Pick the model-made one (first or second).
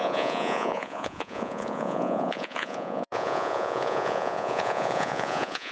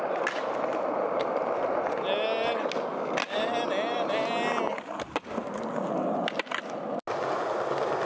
first